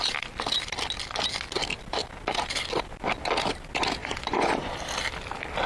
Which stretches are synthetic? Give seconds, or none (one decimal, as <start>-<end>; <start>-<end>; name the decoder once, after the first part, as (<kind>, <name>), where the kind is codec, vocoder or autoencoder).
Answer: 4.0-4.7 (vocoder, Vocos)